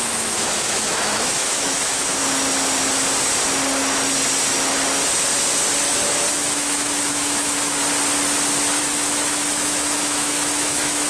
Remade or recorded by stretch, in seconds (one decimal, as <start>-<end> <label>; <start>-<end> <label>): 0.0-2.2 remade; 2.2-6.3 recorded; 6.3-7.8 remade; 7.8-8.8 recorded; 8.8-11.1 remade